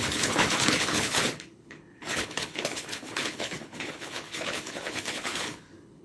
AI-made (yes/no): yes